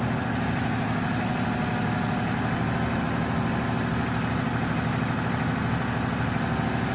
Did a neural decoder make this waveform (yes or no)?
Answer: no